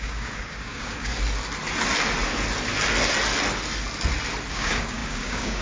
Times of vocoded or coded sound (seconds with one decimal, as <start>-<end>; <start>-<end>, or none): 0.0-1.1; 4.5-5.6